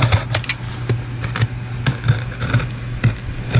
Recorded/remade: recorded